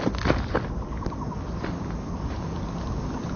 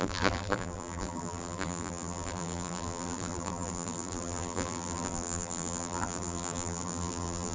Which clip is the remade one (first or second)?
second